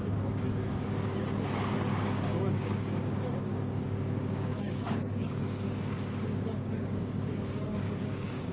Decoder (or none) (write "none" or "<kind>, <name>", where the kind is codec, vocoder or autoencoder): codec, DAC